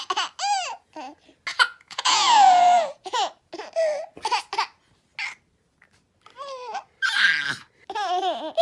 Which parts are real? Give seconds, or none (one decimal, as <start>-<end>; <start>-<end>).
0.0-1.5; 3.5-8.6